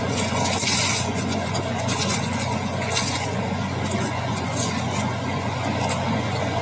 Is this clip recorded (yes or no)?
no